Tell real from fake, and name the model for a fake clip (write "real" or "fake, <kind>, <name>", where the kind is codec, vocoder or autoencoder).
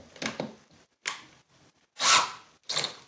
real